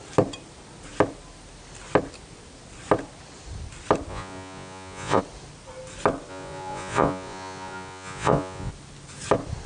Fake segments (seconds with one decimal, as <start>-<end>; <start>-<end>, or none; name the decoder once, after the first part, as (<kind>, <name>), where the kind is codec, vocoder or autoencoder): 4.1-5.2 (vocoder, Vocos); 6.3-8.7